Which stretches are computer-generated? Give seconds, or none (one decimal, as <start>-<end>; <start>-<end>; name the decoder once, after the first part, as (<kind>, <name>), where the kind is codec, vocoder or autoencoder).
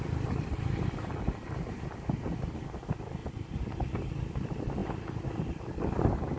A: none